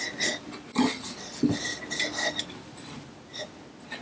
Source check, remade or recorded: recorded